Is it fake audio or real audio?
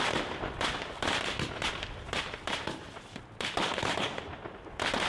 fake